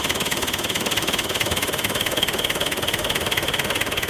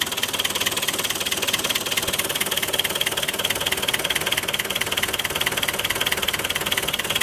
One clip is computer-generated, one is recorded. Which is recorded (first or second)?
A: second